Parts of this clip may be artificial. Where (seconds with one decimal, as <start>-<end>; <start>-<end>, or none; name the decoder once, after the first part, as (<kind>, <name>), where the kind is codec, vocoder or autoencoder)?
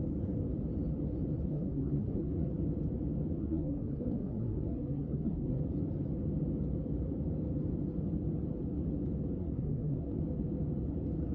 1.5-2.5 (codec, SNAC); 3.4-5.6; 9.4-10.2